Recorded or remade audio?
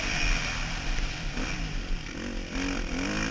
recorded